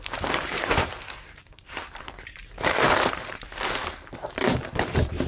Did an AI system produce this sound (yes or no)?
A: yes